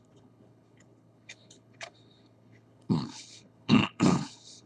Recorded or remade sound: remade